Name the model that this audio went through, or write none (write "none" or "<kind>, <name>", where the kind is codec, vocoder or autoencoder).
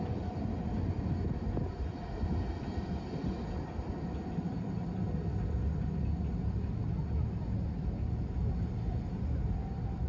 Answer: none